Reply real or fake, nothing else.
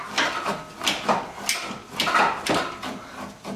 real